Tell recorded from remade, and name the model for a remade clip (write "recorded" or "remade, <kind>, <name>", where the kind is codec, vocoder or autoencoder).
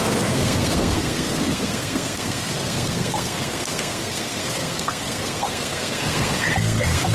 remade, codec, SNAC